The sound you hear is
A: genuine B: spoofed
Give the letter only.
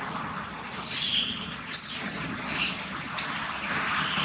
A